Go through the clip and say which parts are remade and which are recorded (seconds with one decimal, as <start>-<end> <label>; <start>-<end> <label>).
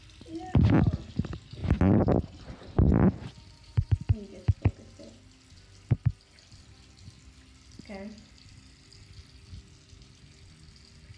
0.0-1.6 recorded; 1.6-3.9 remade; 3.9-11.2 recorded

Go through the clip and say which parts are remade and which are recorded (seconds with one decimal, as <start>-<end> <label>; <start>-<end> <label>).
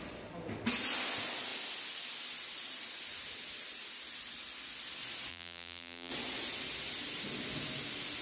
0.0-5.3 recorded; 5.3-6.1 remade; 6.1-8.2 recorded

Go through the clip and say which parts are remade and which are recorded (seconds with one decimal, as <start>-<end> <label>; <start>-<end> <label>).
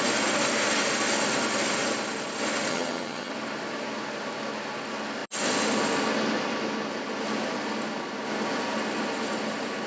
0.0-2.7 recorded; 2.7-3.3 remade; 3.3-9.9 recorded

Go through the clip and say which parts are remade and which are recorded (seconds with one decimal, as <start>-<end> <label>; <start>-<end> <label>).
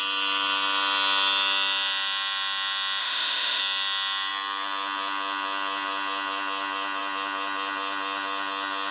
0.0-3.0 recorded; 3.0-3.6 remade; 3.6-8.9 recorded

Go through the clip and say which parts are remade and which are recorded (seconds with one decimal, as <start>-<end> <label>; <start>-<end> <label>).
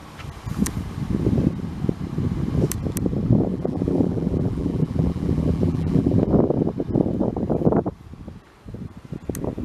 0.0-3.5 recorded; 3.5-6.2 remade; 6.2-9.6 recorded